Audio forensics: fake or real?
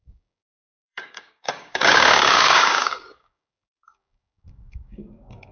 fake